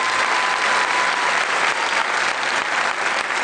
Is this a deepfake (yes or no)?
no